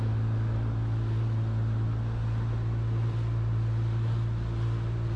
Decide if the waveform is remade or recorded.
recorded